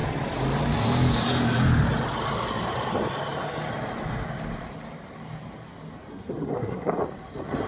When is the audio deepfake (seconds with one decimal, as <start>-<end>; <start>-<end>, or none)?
6.1-7.0